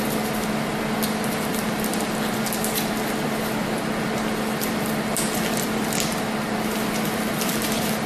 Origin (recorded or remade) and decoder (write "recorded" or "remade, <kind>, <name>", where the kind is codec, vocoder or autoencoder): recorded